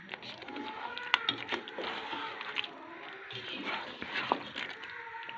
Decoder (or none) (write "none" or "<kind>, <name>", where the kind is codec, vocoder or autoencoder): none